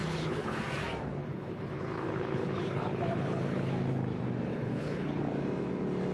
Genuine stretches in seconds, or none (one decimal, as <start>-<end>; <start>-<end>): 0.6-1.2; 3.7-4.5; 5.2-6.1